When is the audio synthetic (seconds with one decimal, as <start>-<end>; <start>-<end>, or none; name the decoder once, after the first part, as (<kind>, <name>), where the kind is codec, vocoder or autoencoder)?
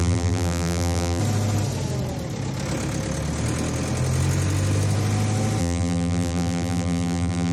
0.0-1.2 (vocoder, BigVGAN v2); 5.6-7.5